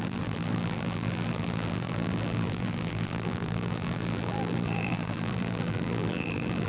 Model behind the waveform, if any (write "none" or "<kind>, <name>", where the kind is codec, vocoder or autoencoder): vocoder, BigVGAN v2